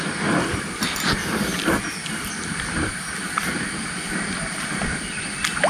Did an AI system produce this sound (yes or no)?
yes